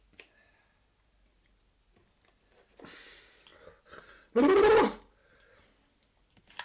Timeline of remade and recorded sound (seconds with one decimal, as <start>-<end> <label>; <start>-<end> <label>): 0.0-6.6 recorded